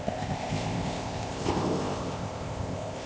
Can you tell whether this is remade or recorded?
remade